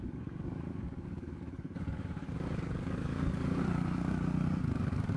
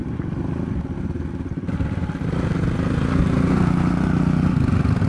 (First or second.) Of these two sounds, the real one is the second